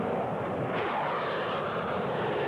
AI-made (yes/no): yes